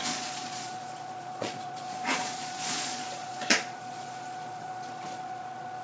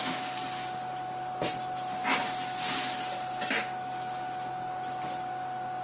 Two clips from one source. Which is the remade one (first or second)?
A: first